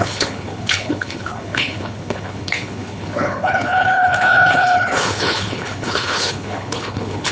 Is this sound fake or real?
fake